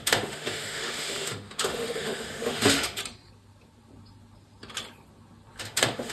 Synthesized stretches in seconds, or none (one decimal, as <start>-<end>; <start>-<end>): 0.0-3.0; 5.6-6.1